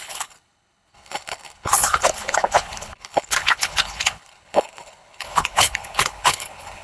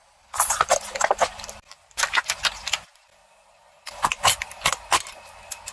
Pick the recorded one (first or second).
second